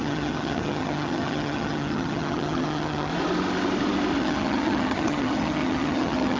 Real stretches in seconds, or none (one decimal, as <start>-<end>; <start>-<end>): 3.1-4.2